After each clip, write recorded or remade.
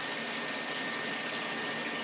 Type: recorded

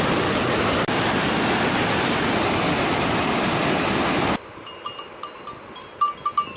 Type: recorded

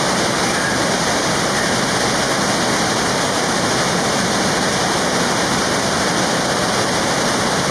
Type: recorded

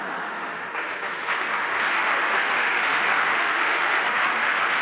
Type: remade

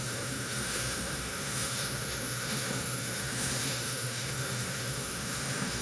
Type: remade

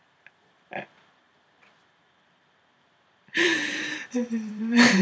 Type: remade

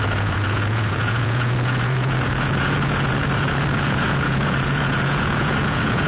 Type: remade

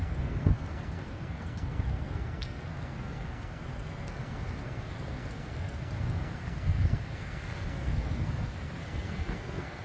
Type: remade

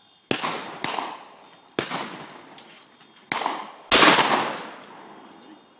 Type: recorded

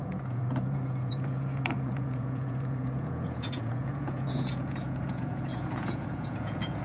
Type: remade